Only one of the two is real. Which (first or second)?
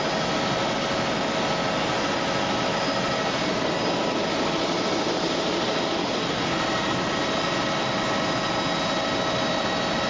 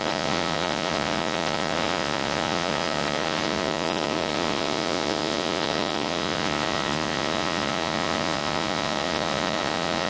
first